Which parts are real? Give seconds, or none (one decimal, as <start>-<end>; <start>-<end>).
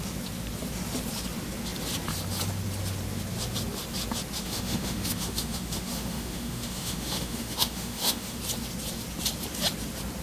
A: 0.0-4.4; 8.4-10.2